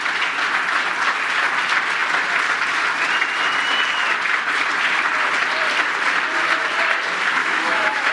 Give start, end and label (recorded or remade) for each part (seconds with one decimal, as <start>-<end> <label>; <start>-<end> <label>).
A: 0.0-7.4 recorded; 7.4-8.1 remade